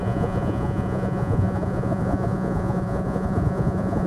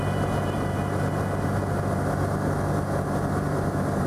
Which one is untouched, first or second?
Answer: second